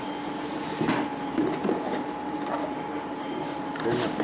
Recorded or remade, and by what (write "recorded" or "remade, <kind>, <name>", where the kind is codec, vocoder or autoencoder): recorded